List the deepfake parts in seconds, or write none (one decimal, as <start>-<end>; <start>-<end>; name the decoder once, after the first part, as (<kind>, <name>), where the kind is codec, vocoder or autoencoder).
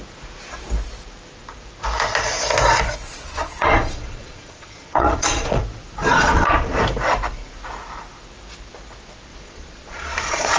3.0-5.6 (vocoder, Vocos); 6.0-6.8; 9.3-10.6